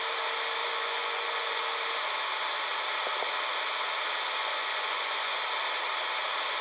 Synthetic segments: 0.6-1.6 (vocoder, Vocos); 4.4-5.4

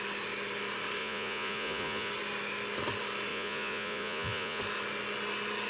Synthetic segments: 1.0-2.1 (vocoder, Vocos); 3.3-4.6

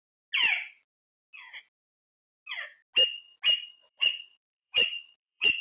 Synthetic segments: 3.8-5.6 (vocoder, Vocos)

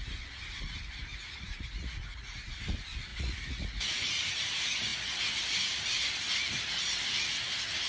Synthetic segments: 1.1-2.6 (vocoder, Vocos); 3.1-4.1

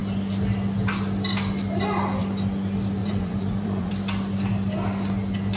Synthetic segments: 3.0-3.9 (vocoder, Vocos)